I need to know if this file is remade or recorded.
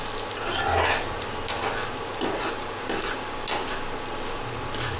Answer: recorded